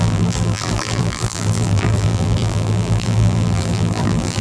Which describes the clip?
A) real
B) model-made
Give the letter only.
B